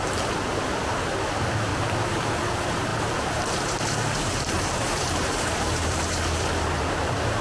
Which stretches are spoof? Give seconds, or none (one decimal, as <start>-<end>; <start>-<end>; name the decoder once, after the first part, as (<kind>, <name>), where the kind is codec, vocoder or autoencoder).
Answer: 0.0-1.7 (vocoder, BigVGAN v2); 2.5-7.4